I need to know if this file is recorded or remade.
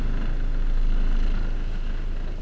recorded